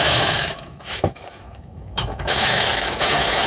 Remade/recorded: remade